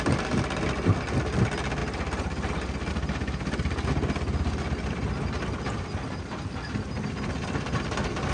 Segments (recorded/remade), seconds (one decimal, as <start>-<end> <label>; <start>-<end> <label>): 0.0-8.3 recorded